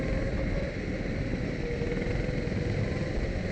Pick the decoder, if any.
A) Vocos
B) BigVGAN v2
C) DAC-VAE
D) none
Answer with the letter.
D